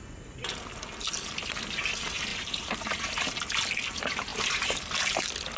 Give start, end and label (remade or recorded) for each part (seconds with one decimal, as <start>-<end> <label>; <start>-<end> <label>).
0.0-2.3 recorded; 2.3-3.1 remade; 3.1-4.3 recorded; 4.3-4.9 remade; 4.9-5.6 recorded